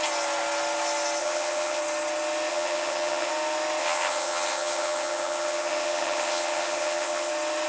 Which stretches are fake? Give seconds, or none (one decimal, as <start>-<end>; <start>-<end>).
1.2-1.8; 2.5-3.3; 3.8-7.3